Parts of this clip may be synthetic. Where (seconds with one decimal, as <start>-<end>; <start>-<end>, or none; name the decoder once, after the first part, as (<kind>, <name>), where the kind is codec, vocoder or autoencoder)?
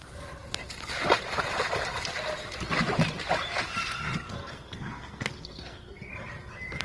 4.4-6.1 (codec, SNAC)